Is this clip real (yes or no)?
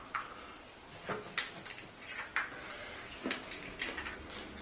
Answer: yes